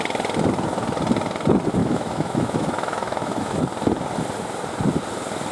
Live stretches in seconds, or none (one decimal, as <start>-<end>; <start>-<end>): 0.0-1.8; 3.6-5.5